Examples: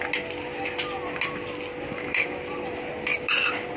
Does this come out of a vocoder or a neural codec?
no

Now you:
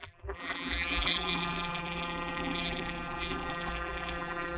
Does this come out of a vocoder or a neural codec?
yes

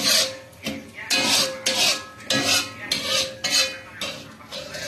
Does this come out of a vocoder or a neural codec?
no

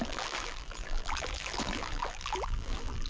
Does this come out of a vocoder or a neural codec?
yes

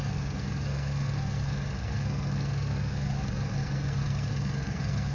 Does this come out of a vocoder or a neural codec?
yes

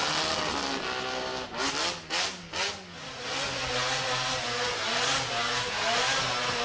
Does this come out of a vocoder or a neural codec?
no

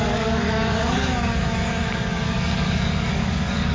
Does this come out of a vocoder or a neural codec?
yes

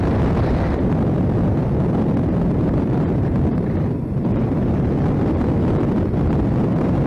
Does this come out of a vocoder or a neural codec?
yes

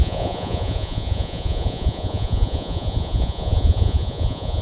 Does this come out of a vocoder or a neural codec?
yes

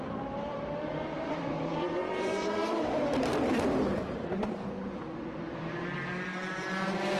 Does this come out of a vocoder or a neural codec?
yes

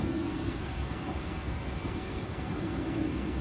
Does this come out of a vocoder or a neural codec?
yes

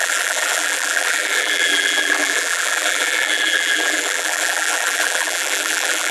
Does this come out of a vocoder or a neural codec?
yes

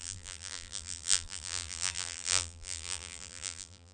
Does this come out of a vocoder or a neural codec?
yes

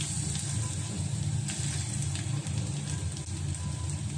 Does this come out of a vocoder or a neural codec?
no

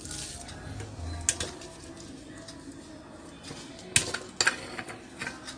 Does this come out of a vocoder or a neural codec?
no